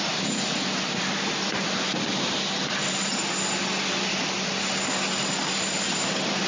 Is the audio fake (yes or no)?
no